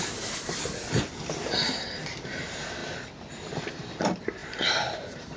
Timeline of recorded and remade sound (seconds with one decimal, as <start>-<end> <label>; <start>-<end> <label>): 0.0-0.8 remade; 0.8-1.8 recorded; 1.8-2.8 remade; 2.8-3.7 recorded; 3.7-5.4 remade